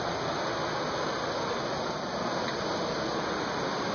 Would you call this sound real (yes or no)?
yes